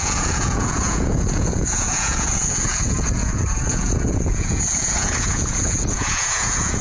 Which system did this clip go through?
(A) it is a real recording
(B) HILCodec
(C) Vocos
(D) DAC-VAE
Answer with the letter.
C